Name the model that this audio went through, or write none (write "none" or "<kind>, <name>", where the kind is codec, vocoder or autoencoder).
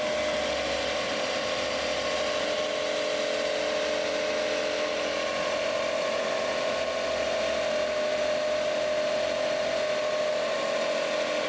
none